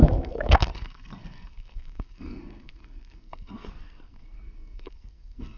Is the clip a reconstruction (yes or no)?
yes